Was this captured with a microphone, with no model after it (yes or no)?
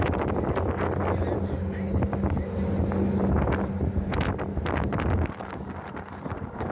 yes